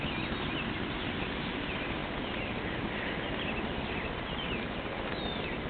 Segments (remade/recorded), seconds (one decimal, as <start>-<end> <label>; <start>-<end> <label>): 0.0-5.7 recorded